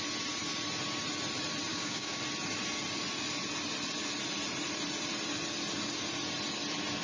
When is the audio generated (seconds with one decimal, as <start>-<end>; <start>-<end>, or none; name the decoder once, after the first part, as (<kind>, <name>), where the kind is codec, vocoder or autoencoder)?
1.7-2.2 (codec, DAC)

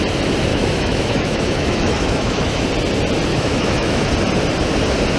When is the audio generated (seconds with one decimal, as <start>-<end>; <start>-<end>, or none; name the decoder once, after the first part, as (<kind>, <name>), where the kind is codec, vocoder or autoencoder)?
0.5-2.6 (autoencoder, DAC-VAE); 3.3-4.1

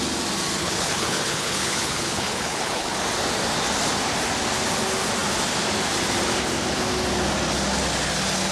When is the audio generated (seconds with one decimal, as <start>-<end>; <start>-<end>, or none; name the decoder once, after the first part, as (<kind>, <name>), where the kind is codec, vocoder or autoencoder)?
0.6-3.0 (codec, HILCodec)

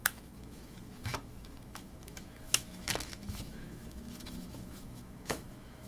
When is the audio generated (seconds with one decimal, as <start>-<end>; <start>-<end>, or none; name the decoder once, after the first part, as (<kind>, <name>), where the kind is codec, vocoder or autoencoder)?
0.0-5.9 (autoencoder, DAC-VAE)

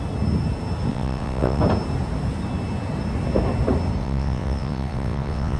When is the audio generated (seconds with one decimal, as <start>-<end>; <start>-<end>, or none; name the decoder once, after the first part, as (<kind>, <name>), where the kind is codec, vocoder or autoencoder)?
0.9-1.6 (vocoder, WaveNeXt); 4.0-5.6

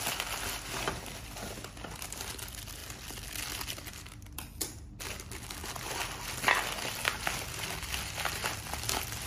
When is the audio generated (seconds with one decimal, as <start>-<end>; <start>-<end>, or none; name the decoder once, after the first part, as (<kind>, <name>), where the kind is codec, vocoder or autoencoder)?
none

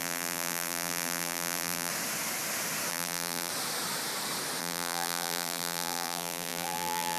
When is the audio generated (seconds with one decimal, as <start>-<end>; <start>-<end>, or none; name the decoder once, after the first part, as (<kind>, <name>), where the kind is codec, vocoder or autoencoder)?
0.0-1.9 (vocoder, BigVGAN v2); 2.9-3.5; 4.6-7.2